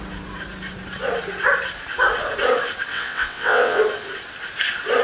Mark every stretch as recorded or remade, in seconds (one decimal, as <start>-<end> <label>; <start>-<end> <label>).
0.0-2.9 recorded; 2.9-3.8 remade; 3.8-5.0 recorded